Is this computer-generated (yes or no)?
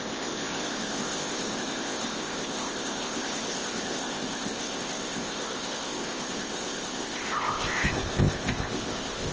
yes